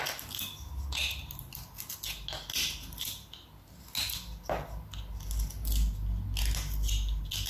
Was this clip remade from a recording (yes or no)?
no